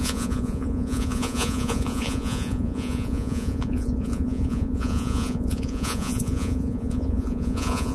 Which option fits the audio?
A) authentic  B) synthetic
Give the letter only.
B